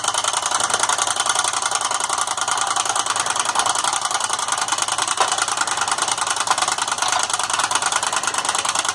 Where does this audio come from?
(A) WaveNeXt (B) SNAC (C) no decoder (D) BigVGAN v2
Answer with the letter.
C